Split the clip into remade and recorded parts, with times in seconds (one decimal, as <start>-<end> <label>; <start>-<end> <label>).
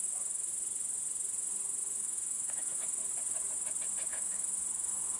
0.0-0.5 remade; 0.5-1.8 recorded; 1.8-3.0 remade; 3.0-4.1 recorded; 4.1-5.2 remade